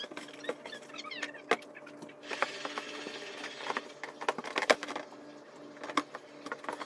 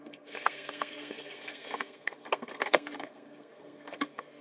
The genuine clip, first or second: first